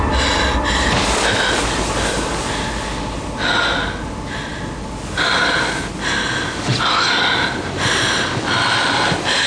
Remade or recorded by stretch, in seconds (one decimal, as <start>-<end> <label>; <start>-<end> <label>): 0.0-9.5 recorded